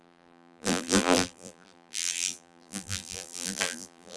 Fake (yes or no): yes